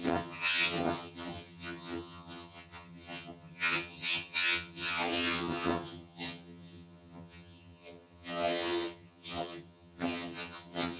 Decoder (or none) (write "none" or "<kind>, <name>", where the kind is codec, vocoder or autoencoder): vocoder, HiFi-GAN